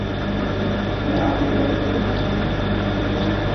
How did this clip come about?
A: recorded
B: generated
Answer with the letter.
A